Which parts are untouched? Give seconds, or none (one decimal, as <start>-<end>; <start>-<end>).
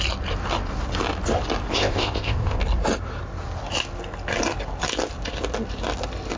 0.0-1.7; 2.6-6.4